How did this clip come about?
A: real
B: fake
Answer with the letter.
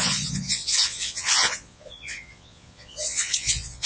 B